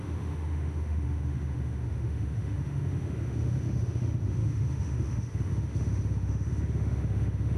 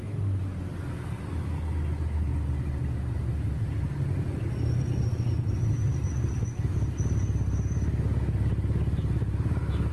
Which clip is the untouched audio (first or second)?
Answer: second